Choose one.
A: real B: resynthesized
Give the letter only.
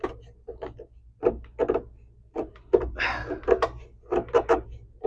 A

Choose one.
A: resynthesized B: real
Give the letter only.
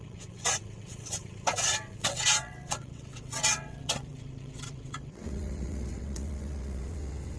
A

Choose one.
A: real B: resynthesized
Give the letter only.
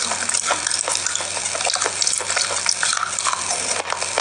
A